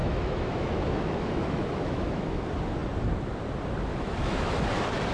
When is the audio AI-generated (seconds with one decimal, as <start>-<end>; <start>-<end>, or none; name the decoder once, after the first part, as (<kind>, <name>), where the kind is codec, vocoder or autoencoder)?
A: 0.0-2.4 (autoencoder, DAC-VAE); 3.9-4.5